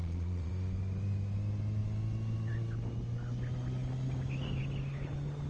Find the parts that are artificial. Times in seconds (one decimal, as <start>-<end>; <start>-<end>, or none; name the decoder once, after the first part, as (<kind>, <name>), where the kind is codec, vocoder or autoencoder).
0.0-0.5 (vocoder, Vocos)